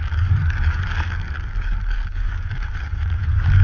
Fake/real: fake